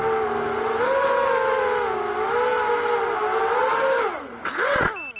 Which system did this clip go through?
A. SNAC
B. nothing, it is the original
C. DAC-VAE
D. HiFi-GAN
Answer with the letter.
B